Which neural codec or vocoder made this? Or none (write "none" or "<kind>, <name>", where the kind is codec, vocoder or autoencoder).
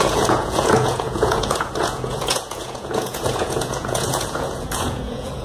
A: vocoder, Vocos